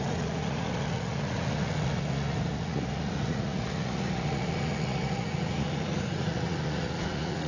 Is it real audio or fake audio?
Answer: fake